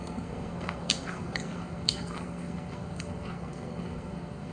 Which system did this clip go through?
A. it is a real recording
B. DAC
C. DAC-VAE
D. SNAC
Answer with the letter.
D